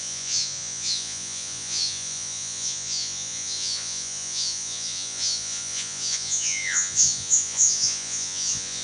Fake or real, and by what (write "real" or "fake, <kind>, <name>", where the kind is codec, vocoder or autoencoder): fake, vocoder, Vocos